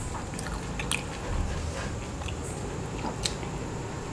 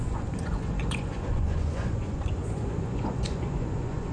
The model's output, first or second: second